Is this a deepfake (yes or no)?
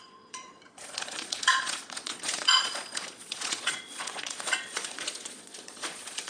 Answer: yes